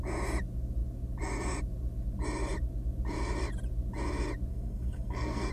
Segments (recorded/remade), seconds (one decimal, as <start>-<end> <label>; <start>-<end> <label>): 0.0-4.5 recorded; 4.5-5.5 remade